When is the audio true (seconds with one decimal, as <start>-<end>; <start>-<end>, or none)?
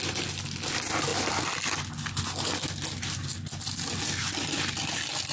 0.0-5.3